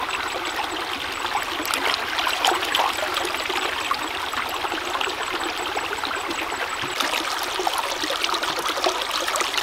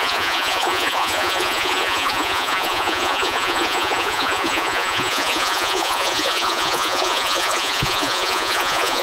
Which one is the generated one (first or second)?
second